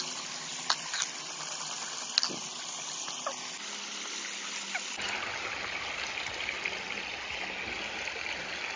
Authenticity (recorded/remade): recorded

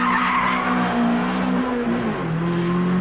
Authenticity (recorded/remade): recorded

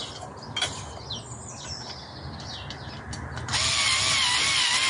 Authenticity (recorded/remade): recorded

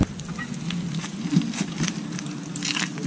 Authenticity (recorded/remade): recorded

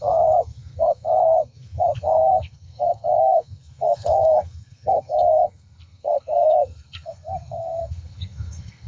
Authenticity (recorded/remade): remade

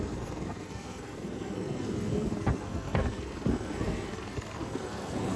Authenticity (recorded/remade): remade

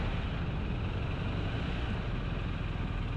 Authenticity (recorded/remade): recorded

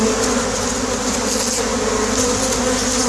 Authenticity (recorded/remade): recorded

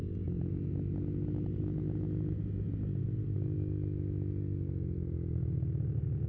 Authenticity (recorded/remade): recorded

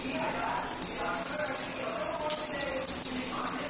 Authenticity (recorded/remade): recorded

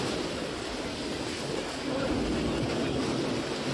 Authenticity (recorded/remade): recorded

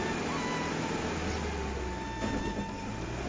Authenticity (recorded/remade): recorded